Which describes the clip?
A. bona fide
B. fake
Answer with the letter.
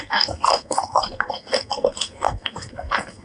B